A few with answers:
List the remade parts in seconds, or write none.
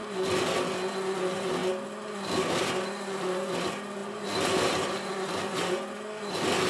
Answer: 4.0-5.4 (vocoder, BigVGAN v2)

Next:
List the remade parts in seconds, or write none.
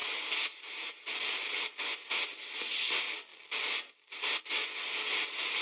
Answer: 0.0-1.7 (vocoder, BigVGAN v2); 3.3-4.4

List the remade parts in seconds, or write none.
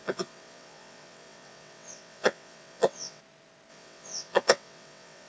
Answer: 0.0-3.2 (vocoder, WaveNeXt); 3.7-5.3